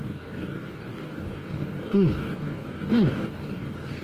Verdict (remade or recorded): remade